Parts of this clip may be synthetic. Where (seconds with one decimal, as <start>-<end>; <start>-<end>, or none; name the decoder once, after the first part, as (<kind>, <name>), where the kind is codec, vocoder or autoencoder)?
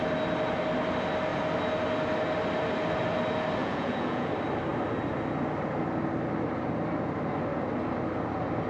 3.6-4.3 (vocoder, Vocos)